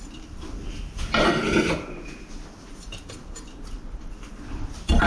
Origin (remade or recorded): recorded